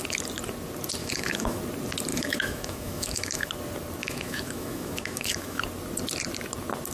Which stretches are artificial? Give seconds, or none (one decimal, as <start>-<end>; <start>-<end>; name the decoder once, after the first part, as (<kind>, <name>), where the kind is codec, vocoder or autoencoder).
1.0-1.6 (autoencoder, DAC-VAE); 2.1-3.5; 4.0-5.6

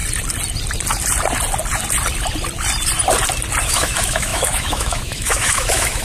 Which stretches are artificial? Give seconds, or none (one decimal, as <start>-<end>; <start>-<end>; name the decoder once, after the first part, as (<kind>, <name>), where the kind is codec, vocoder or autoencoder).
3.6-6.0 (autoencoder, DAC-VAE)

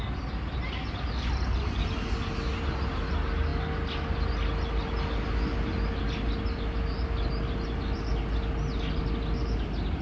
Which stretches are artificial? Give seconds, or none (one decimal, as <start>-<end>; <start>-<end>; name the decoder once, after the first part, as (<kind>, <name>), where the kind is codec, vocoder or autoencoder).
none

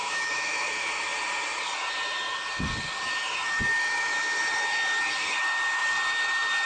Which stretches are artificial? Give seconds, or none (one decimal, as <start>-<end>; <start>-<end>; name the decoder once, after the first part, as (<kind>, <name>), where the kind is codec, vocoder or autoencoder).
0.0-1.0 (autoencoder, DAC-VAE); 3.7-4.4

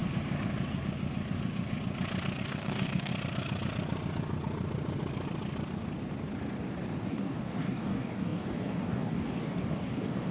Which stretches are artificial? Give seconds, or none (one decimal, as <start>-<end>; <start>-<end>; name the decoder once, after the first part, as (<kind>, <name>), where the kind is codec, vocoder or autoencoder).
2.4-3.1 (codec, DAC); 7.1-10.3